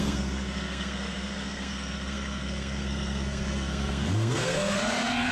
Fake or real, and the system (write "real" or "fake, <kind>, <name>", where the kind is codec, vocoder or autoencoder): fake, codec, SNAC